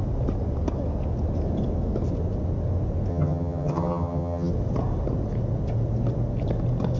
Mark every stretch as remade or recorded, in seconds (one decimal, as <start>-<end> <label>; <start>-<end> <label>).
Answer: 0.0-3.1 recorded; 3.1-4.5 remade; 4.5-7.0 recorded